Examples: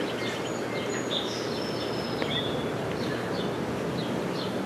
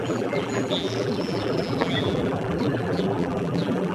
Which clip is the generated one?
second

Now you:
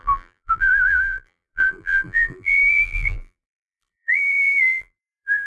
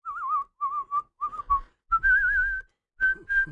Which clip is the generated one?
first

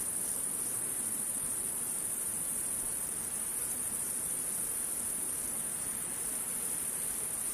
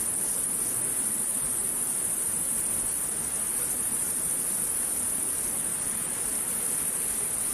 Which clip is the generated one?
first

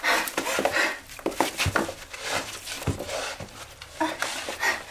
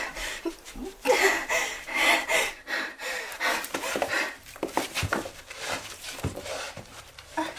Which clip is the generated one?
second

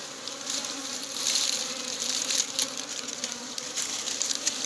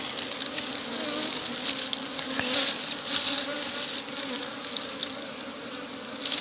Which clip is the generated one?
first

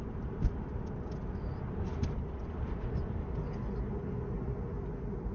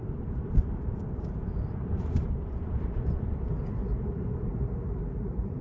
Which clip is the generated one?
second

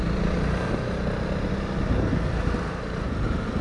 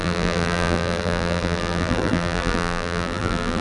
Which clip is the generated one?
second